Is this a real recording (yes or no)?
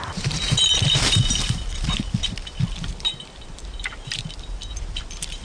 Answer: no